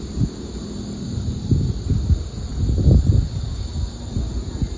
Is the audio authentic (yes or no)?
yes